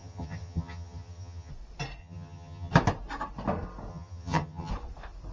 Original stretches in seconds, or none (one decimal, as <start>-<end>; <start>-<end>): 1.5-2.0; 2.7-3.9; 4.7-5.3